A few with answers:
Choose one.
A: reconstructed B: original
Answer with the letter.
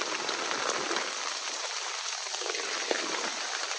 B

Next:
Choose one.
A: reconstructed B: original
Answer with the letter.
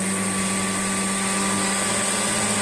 B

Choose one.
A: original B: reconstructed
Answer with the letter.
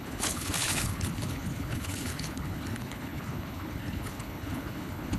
B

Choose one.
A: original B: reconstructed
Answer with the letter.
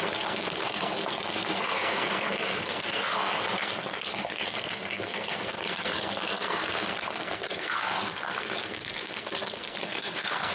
B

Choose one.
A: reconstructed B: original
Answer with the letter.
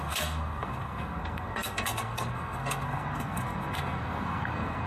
A